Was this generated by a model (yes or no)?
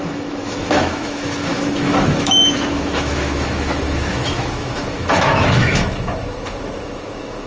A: yes